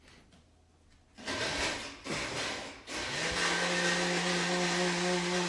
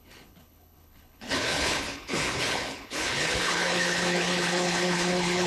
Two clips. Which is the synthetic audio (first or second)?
second